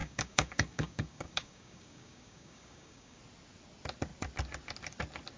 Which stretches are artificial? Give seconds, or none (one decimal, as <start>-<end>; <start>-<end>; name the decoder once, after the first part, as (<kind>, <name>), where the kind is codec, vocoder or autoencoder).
0.0-3.2 (codec, DAC)